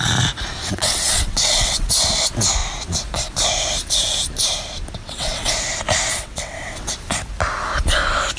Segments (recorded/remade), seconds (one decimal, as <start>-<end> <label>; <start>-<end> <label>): 0.0-0.6 recorded; 0.6-1.9 remade; 1.9-5.0 recorded; 5.0-5.5 remade; 5.5-6.1 recorded; 6.1-6.9 remade; 6.9-8.4 recorded